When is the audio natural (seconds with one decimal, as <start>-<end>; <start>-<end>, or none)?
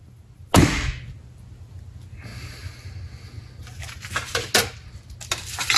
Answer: 0.0-5.8